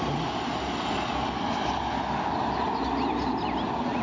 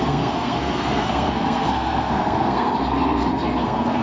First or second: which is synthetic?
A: second